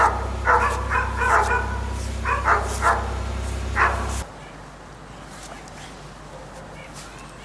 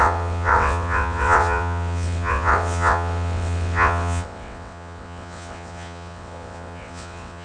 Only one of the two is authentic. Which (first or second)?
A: first